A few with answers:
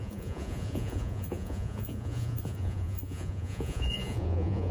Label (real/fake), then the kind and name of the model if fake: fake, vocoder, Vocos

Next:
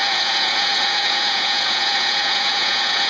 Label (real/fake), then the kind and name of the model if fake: fake, vocoder, Vocos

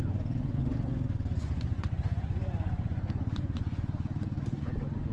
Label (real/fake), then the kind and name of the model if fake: fake, vocoder, Vocos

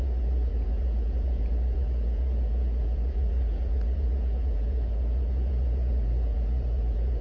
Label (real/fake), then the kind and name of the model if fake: fake, vocoder, Vocos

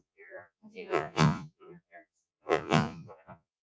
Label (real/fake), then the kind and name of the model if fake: fake, vocoder, Vocos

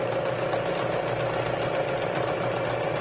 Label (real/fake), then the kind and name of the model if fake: real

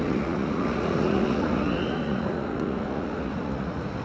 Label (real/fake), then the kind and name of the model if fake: fake, vocoder, Vocos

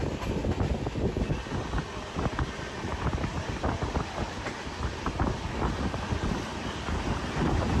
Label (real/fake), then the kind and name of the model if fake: real